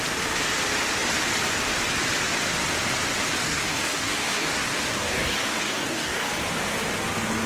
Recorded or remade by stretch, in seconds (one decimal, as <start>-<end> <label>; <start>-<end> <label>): 0.0-3.4 recorded; 3.4-6.3 remade; 6.3-7.5 recorded